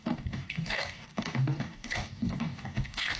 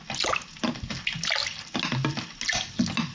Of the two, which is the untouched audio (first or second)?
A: second